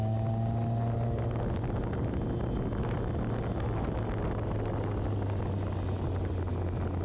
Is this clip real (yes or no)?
yes